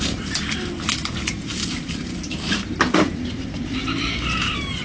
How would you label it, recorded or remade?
remade